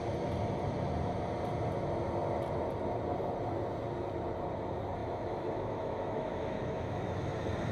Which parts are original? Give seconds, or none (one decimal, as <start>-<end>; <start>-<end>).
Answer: 0.0-5.0; 7.3-7.7